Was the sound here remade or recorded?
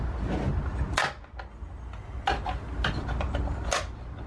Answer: recorded